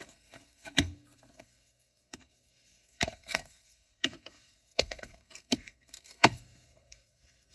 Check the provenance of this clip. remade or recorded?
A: remade